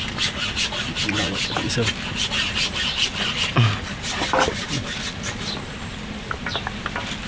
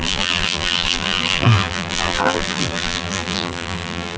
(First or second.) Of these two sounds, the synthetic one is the second